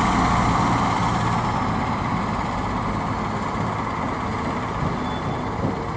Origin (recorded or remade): recorded